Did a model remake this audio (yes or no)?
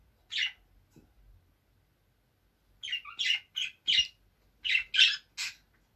no